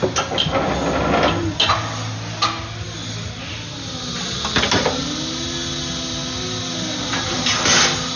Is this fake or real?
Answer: real